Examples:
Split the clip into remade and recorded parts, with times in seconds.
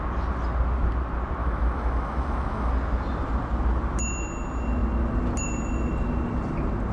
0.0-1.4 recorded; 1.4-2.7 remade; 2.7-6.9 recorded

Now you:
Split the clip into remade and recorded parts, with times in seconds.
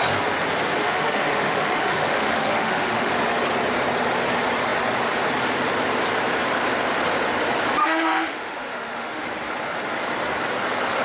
0.0-0.8 recorded; 0.8-3.1 remade; 3.1-7.8 recorded; 7.8-9.2 remade; 9.2-11.0 recorded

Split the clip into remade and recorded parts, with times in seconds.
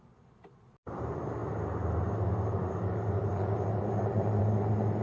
0.0-5.0 recorded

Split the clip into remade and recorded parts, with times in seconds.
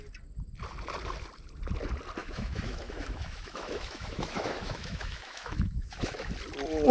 0.0-2.2 recorded; 2.2-6.3 remade; 6.3-6.9 recorded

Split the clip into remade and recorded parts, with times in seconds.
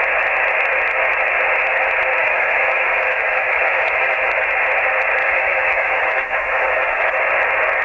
0.0-2.2 recorded; 2.2-4.3 remade; 4.3-5.2 recorded; 5.2-7.1 remade; 7.1-7.8 recorded